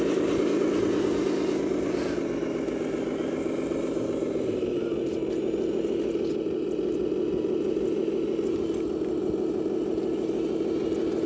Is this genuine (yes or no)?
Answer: yes